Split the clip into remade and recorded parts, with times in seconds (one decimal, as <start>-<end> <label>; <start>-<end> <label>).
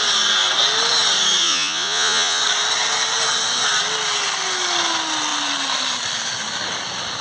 0.0-1.4 recorded; 1.4-2.4 remade; 2.4-7.2 recorded